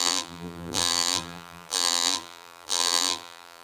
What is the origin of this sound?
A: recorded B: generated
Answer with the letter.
B